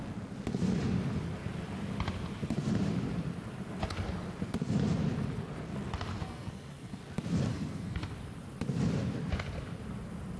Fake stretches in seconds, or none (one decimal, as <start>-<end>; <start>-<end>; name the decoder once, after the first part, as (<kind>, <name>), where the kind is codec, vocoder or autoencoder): 6.1-7.0 (codec, SNAC); 7.5-8.1